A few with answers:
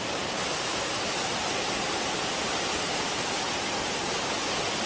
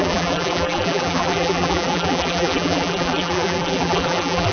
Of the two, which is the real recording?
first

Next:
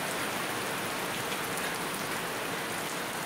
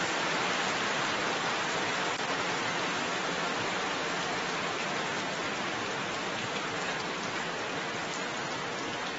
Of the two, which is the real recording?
first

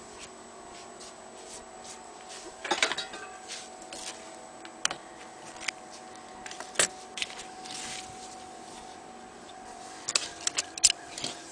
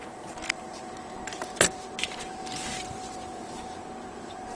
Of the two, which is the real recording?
first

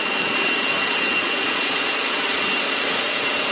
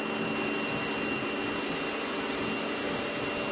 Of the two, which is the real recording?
second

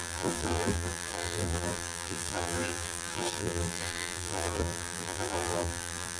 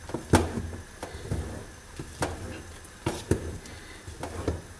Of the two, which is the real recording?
second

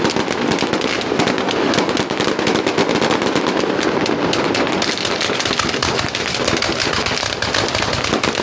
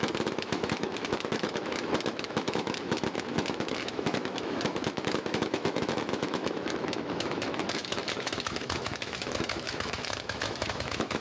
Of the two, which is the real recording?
first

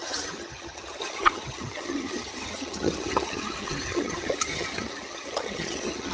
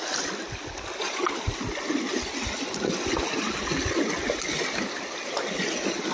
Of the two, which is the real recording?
second